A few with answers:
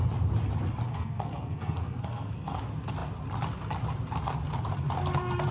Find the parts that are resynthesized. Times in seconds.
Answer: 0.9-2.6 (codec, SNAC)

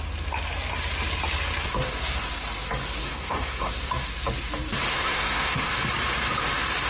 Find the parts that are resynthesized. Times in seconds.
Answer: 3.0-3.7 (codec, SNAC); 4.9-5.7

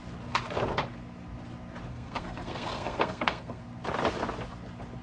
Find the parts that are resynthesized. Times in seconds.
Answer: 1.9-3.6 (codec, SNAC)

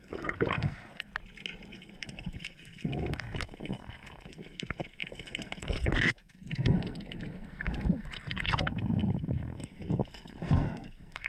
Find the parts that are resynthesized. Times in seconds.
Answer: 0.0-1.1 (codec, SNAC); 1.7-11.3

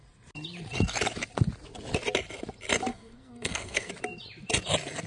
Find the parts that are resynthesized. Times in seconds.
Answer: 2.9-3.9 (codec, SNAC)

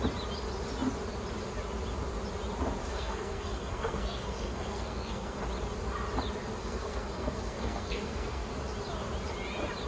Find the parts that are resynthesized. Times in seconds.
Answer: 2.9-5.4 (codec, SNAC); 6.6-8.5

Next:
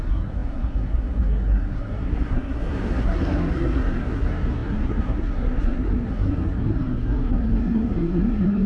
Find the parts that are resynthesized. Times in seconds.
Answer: 0.0-8.7 (codec, SNAC)